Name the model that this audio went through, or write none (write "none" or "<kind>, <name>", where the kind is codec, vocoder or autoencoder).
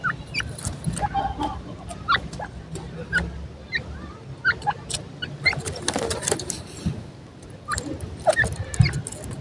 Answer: none